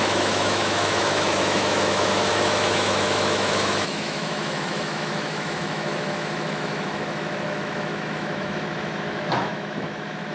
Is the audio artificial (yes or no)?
yes